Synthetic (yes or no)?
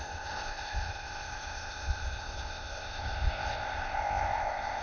yes